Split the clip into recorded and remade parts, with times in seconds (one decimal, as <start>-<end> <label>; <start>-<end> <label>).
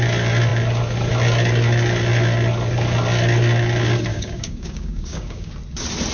0.0-4.1 recorded; 4.1-5.5 remade; 5.5-6.1 recorded